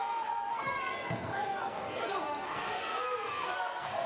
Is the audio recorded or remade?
remade